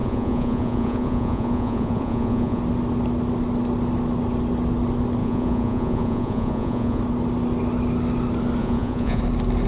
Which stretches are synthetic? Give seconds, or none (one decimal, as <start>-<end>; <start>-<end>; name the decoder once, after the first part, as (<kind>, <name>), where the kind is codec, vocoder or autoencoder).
0.0-2.6 (vocoder, Vocos); 5.2-7.0; 8.6-9.2